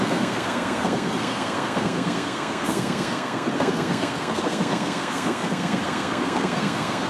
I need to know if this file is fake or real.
fake